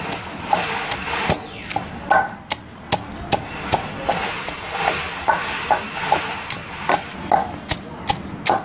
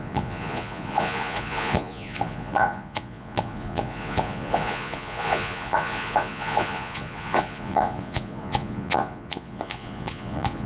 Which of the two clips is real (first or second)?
first